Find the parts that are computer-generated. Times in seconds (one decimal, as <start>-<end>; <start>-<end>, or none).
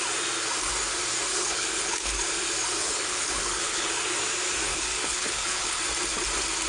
1.3-2.1; 2.8-3.9; 4.7-5.8